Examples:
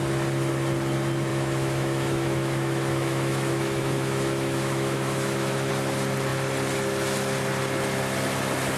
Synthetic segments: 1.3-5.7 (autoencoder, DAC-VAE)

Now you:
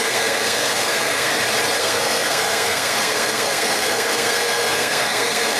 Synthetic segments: 0.0-1.3 (codec, SNAC); 1.8-5.6

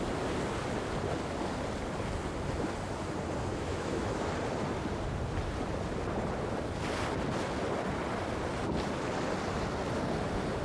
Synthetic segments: 3.5-4.3 (autoencoder, DAC-VAE)

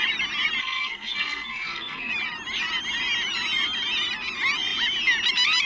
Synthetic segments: 0.6-2.1 (codec, SNAC)

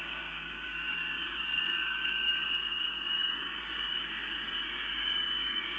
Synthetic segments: 0.0-5.8 (codec, DAC)